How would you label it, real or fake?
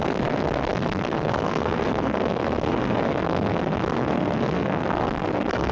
fake